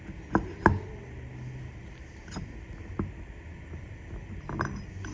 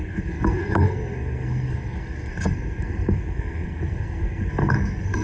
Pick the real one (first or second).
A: first